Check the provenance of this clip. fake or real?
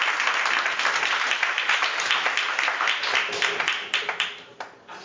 real